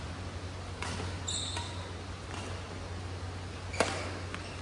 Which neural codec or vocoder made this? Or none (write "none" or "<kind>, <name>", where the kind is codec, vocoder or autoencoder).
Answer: none